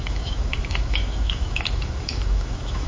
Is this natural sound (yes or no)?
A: no